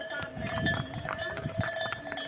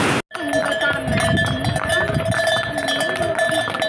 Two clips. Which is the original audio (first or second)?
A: second